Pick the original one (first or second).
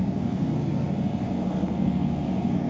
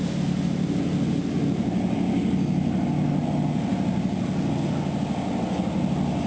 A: second